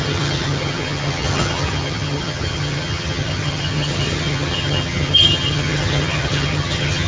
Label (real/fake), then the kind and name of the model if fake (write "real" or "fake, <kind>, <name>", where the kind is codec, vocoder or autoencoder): fake, vocoder, HiFi-GAN